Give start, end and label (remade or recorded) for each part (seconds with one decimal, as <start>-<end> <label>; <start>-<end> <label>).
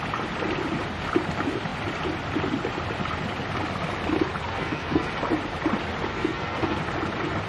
0.0-4.5 recorded; 4.5-5.1 remade; 5.1-6.1 recorded; 6.1-6.8 remade; 6.8-7.5 recorded